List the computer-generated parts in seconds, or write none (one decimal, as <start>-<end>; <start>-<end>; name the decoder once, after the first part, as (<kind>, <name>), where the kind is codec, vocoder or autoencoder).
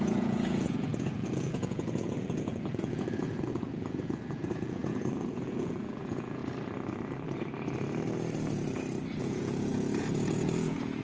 0.0-6.4 (vocoder, Vocos); 9.2-11.0